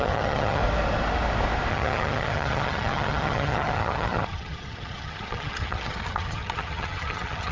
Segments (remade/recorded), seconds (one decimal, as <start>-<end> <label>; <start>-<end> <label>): 0.0-0.6 remade; 0.6-1.7 recorded; 1.7-7.5 remade